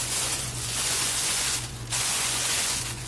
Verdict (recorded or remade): remade